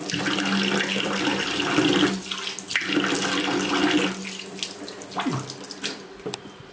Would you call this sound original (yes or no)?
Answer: yes